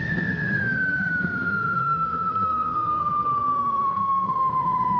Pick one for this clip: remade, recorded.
remade